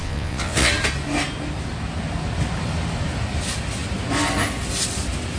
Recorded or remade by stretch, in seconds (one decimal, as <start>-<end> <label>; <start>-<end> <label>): 0.0-0.7 remade; 0.7-5.4 recorded